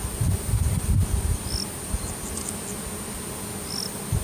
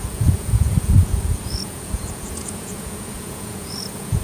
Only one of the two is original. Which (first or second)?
first